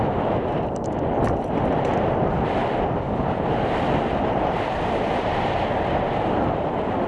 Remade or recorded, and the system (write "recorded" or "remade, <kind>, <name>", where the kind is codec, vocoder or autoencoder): recorded